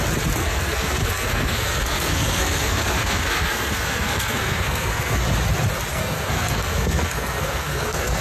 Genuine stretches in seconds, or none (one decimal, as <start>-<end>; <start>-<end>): 0.0-0.4; 5.2-5.9